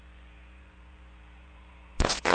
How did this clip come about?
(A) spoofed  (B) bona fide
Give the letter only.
A